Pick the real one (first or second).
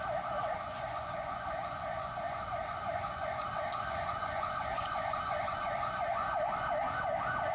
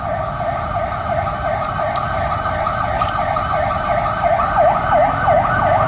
second